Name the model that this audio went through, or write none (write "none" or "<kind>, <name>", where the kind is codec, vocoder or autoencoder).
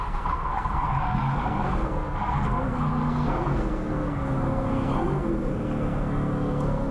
codec, SNAC